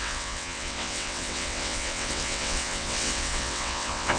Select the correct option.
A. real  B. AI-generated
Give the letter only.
B